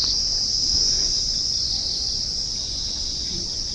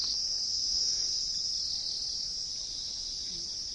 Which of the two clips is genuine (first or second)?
second